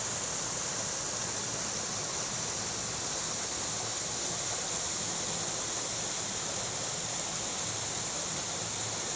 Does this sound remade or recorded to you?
recorded